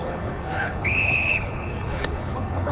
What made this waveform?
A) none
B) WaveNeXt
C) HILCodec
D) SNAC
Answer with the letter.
C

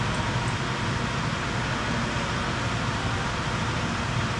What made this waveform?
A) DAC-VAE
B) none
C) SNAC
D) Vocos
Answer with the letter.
B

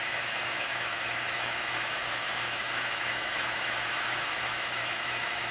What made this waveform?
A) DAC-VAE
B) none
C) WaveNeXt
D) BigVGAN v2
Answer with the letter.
A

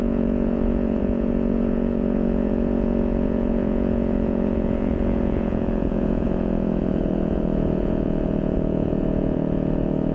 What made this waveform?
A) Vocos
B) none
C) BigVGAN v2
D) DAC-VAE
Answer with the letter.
A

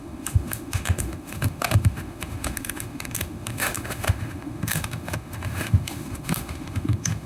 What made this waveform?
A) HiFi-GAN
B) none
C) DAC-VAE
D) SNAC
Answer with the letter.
C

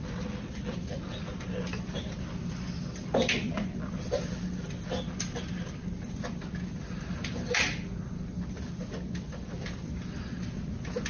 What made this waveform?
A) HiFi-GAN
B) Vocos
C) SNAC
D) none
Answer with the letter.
D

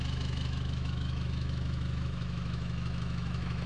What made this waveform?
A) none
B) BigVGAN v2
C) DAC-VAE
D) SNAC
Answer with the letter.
C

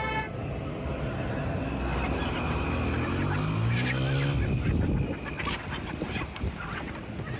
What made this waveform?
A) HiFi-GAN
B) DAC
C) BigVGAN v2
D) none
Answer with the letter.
D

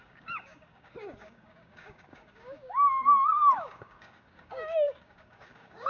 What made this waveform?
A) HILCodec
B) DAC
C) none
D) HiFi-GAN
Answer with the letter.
B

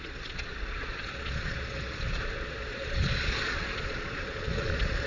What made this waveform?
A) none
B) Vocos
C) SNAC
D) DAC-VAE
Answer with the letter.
B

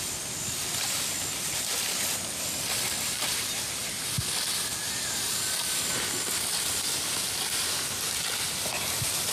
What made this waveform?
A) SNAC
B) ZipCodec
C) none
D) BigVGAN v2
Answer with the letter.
C